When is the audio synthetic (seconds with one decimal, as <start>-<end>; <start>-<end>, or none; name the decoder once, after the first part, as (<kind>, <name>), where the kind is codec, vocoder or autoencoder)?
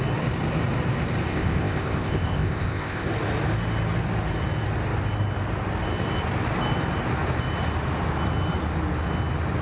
1.3-3.1 (codec, ZipCodec)